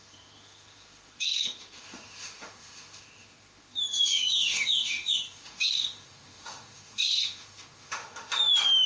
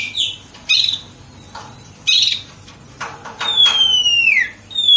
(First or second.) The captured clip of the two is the second